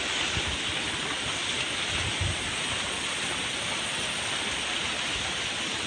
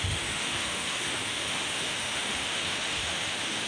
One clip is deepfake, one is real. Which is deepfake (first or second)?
second